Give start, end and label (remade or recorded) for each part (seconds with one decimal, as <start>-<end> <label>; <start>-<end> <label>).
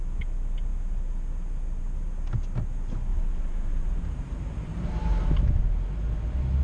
0.0-3.1 recorded; 3.1-5.4 remade; 5.4-6.6 recorded